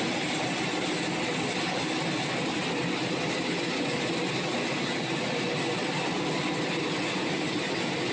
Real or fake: real